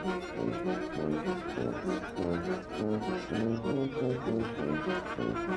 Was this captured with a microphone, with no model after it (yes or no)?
yes